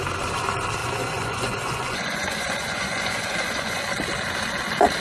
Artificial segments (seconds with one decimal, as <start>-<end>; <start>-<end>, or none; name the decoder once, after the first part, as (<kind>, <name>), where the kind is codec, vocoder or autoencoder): 0.8-3.8 (vocoder, Vocos)